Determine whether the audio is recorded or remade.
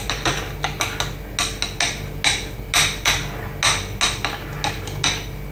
recorded